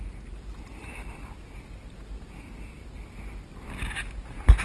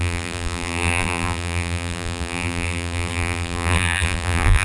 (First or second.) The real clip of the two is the first